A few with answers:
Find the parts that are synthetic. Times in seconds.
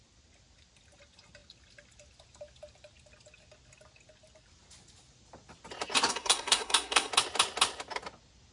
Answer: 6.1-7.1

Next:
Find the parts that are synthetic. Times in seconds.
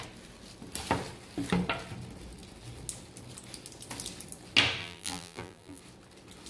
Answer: 4.8-5.8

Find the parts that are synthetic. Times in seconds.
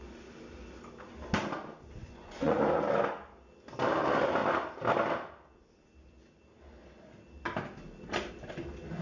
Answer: 2.0-2.6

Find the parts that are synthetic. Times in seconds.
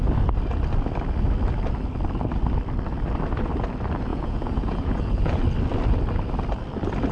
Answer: 4.1-5.4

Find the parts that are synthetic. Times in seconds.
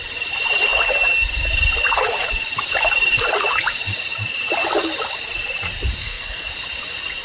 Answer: 6.0-6.5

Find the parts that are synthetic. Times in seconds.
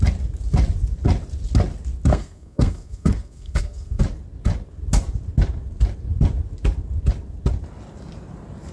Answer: 2.1-4.0